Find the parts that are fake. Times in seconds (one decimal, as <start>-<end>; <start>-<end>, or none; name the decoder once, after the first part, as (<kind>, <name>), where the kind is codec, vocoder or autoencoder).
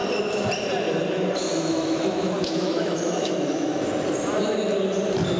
1.5-3.9 (autoencoder, DAC-VAE)